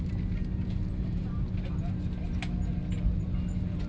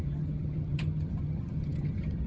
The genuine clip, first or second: first